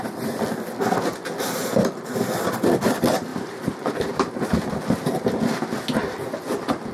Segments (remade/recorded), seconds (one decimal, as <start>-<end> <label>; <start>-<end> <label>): 0.0-3.3 recorded; 3.3-5.2 remade; 5.2-6.9 recorded